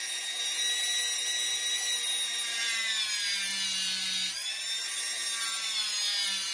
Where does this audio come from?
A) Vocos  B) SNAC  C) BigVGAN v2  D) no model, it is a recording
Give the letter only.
D